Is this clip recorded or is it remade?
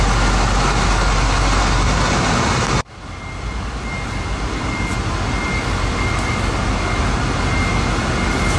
recorded